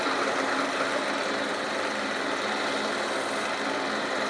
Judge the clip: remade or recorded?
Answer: recorded